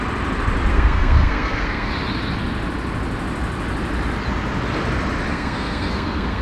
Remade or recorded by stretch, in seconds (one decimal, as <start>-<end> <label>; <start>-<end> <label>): 0.0-0.7 recorded; 0.7-1.9 remade; 1.9-5.3 recorded; 5.3-6.4 remade